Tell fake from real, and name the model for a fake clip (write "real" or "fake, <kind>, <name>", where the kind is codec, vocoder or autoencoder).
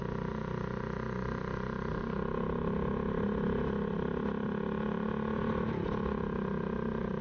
real